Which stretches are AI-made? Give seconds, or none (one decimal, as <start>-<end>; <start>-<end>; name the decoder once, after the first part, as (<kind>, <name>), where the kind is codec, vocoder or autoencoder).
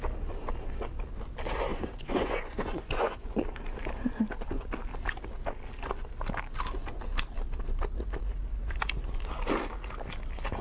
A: 1.7-3.3 (vocoder, Vocos)